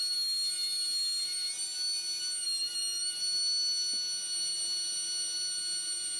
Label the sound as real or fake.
real